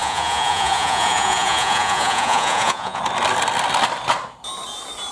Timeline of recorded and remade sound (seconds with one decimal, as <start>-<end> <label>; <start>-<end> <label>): 0.0-3.0 remade; 3.0-5.1 recorded